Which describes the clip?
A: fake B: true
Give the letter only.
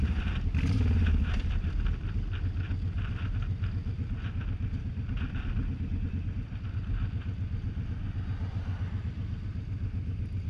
B